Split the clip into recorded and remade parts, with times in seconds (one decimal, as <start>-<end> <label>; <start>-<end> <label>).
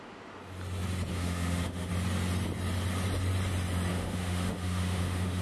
0.0-1.1 recorded; 1.1-1.9 remade; 1.9-3.9 recorded; 3.9-5.4 remade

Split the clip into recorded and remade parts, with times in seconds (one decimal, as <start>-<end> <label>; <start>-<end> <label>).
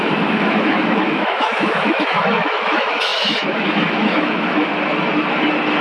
0.0-4.7 remade; 4.7-5.8 recorded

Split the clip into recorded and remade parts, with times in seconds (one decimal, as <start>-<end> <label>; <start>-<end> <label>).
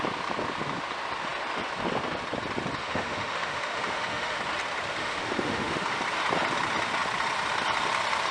0.0-2.8 recorded; 2.8-4.4 remade; 4.4-5.0 recorded; 5.0-6.0 remade; 6.0-8.3 recorded